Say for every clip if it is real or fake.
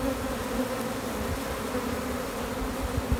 real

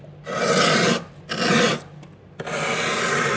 real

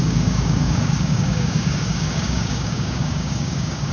fake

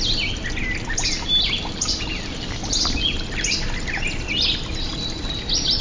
real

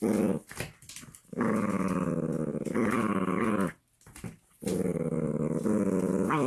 real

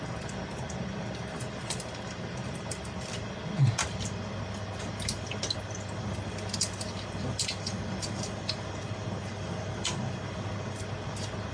real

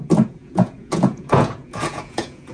fake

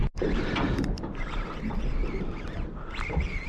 real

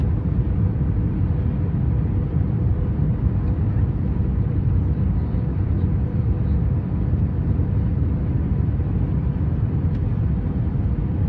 real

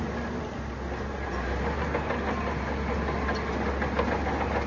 real